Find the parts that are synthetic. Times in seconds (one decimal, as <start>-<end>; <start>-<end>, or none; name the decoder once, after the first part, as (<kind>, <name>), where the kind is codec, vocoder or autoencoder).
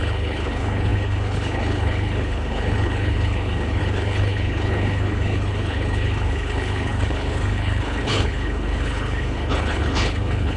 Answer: 0.0-10.6 (codec, HILCodec)